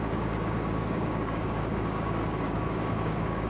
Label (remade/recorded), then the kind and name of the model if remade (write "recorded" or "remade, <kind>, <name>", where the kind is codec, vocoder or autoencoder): remade, codec, DAC